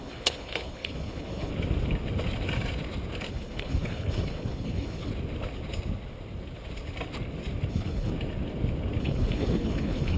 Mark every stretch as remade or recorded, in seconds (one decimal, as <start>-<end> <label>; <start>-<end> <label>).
0.0-1.5 remade; 1.5-3.3 recorded; 3.3-5.1 remade; 5.1-7.7 recorded; 7.7-8.1 remade; 8.1-9.0 recorded; 9.0-10.2 remade